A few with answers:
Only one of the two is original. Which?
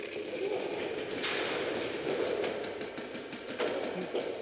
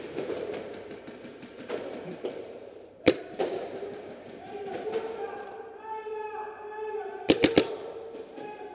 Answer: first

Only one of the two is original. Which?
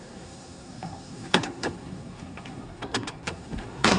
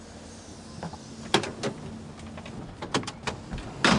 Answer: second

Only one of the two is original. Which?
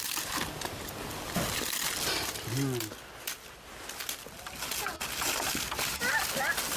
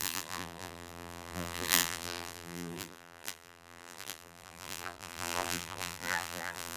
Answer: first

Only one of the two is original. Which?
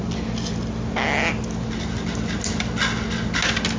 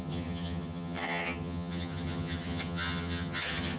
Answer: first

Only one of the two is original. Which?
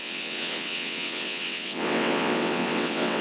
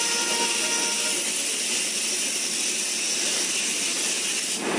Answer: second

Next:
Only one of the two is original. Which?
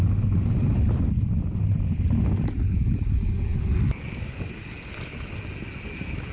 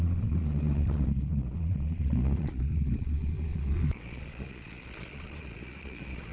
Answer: first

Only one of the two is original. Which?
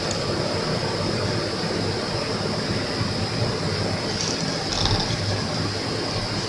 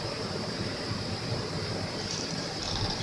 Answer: first